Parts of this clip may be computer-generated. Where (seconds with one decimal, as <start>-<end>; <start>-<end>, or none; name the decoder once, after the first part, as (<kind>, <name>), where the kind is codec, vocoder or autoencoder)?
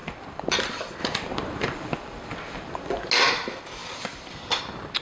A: 0.0-0.6 (vocoder, BigVGAN v2); 1.0-3.1; 3.8-4.6